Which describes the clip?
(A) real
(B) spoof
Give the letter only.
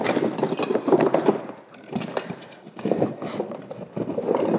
A